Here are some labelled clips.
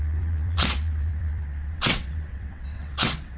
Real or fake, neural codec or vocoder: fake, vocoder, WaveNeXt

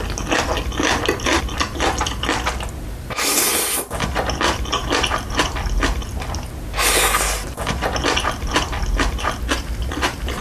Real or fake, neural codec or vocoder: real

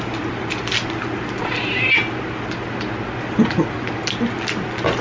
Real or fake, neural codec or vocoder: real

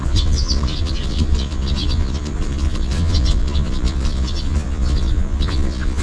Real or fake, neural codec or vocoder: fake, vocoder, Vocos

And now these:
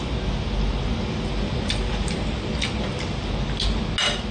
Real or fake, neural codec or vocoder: real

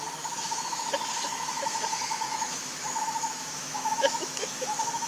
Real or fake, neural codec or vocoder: fake, autoencoder, DAC-VAE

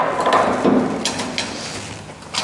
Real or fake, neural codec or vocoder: real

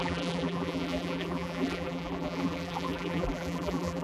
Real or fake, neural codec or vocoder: fake, vocoder, BigVGAN v2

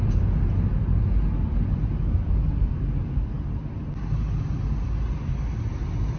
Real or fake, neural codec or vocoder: real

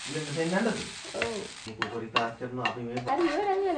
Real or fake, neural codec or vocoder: real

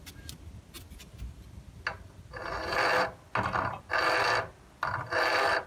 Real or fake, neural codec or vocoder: real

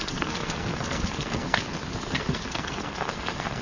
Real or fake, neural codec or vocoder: fake, codec, SNAC